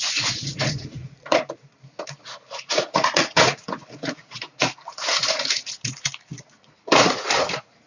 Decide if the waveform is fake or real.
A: fake